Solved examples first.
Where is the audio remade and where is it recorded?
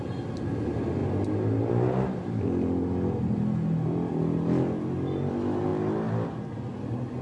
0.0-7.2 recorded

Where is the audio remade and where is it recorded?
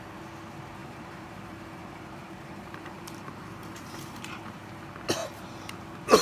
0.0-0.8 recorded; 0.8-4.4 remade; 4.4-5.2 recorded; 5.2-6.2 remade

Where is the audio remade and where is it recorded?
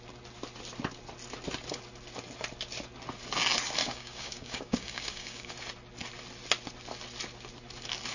0.0-3.8 recorded; 3.8-5.5 remade; 5.5-8.1 recorded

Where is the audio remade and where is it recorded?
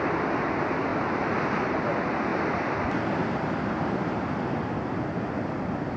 0.0-6.0 recorded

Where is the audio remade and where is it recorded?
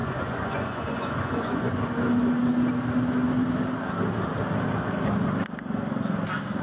0.0-1.8 remade; 1.8-6.6 recorded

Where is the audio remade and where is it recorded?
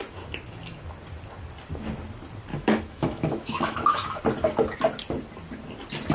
0.0-2.5 recorded; 2.5-4.2 remade; 4.2-6.1 recorded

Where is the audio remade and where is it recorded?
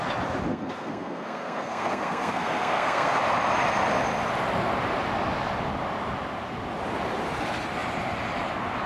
0.0-0.5 recorded; 0.5-3.2 remade; 3.2-8.9 recorded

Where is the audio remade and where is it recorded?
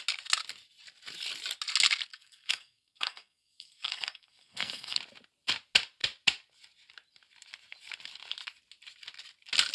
0.0-2.1 recorded; 2.1-5.0 remade; 5.0-9.7 recorded